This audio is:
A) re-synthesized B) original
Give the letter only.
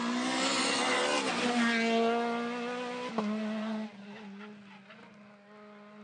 B